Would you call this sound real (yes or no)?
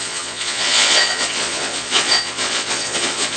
no